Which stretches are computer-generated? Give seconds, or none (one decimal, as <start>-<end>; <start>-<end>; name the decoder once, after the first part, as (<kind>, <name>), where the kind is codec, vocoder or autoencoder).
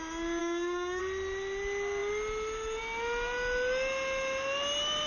0.4-1.0 (codec, DAC)